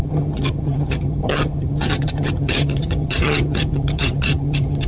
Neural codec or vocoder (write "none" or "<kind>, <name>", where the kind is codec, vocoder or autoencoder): vocoder, HiFi-GAN